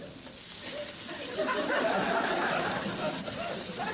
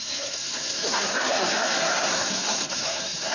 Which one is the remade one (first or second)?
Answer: second